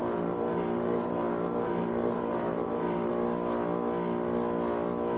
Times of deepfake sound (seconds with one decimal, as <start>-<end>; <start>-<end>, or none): 0.0-3.1